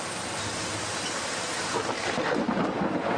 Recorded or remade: recorded